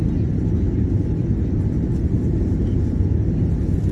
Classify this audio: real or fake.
real